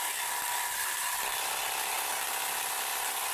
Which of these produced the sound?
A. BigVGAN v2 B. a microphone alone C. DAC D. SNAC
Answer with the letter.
B